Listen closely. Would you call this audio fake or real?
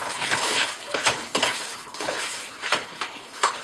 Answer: fake